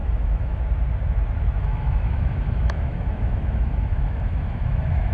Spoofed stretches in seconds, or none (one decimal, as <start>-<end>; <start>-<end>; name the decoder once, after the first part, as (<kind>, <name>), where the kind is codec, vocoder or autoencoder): 0.0-0.6 (autoencoder, DAC-VAE); 1.6-5.1